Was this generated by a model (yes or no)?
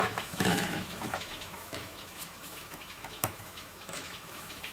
yes